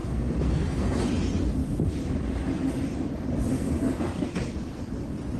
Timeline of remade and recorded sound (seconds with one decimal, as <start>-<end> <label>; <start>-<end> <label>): 0.0-1.0 remade; 1.0-3.5 recorded; 3.5-4.8 remade; 4.8-5.4 recorded